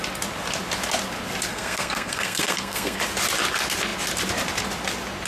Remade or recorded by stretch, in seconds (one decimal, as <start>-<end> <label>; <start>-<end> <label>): 0.0-1.5 recorded; 1.5-3.0 remade; 3.0-5.3 recorded